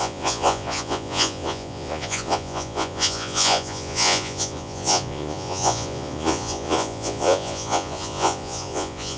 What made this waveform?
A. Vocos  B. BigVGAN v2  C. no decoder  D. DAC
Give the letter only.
A